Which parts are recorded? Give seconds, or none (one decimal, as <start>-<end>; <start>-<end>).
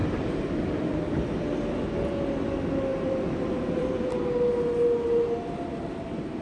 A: 1.1-2.9; 4.1-5.4